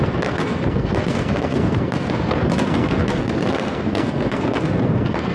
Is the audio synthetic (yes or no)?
yes